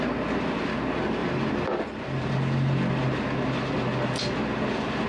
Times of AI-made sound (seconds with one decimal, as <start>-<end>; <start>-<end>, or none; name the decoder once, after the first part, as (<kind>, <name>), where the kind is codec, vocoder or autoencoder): 1.2-1.8 (vocoder, BigVGAN v2)